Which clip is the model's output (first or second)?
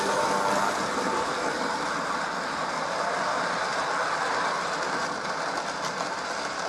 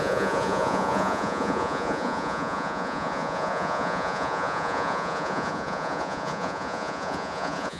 second